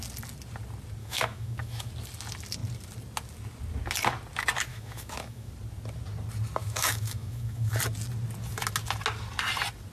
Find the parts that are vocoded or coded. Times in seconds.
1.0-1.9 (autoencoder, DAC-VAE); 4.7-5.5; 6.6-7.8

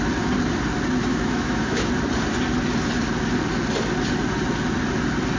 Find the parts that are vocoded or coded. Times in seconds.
1.1-1.9 (autoencoder, DAC-VAE)

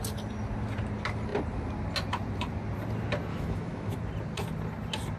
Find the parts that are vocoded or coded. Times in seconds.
3.3-3.9 (autoencoder, DAC-VAE)

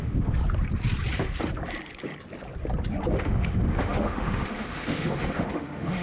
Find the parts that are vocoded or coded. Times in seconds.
0.0-0.4 (autoencoder, DAC-VAE); 3.1-6.0

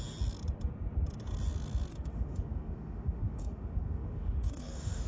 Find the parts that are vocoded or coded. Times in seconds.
1.9-5.1 (autoencoder, DAC-VAE)

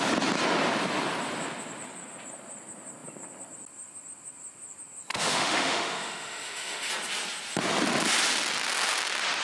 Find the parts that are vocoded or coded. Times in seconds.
5.1-6.9 (autoencoder, DAC-VAE)

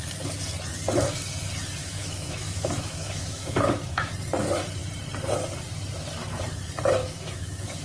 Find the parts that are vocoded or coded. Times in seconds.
1.8-4.1 (autoencoder, DAC-VAE); 7.0-7.8